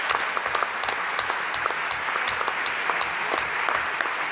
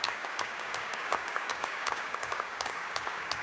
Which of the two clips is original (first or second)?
first